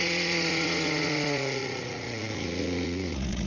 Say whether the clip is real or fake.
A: fake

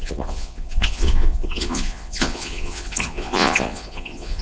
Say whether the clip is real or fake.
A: fake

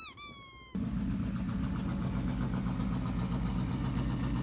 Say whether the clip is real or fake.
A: real